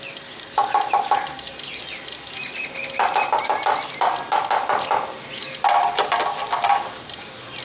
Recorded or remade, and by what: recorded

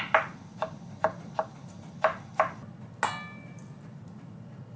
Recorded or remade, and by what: recorded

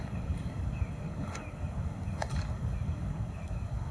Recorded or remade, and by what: remade, codec, DAC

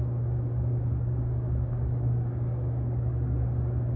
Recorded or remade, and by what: remade, codec, DAC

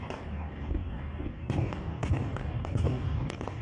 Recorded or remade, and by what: remade, codec, DAC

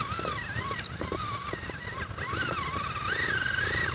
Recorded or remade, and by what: recorded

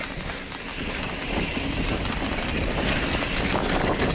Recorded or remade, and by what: recorded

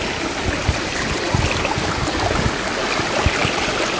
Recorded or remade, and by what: recorded